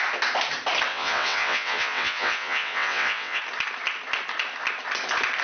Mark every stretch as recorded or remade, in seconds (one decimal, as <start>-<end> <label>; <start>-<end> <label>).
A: 0.0-0.9 recorded; 0.9-3.4 remade; 3.4-5.4 recorded